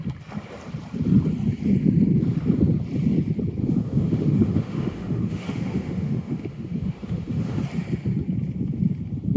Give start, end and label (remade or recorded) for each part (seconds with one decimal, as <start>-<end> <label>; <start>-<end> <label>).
0.0-3.6 recorded; 3.6-7.6 remade; 7.6-9.4 recorded